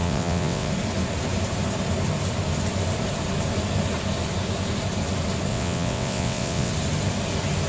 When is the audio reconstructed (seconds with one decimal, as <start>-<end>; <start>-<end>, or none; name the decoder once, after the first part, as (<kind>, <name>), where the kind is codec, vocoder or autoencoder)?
0.0-0.7 (vocoder, WaveNeXt); 5.5-6.7